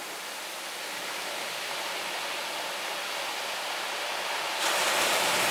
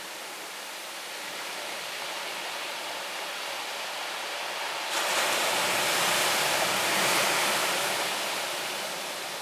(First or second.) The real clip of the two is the first